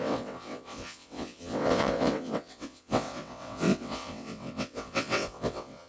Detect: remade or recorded remade